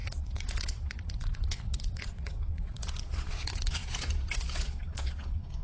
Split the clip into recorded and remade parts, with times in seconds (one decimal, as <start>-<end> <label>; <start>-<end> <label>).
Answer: 0.0-5.6 remade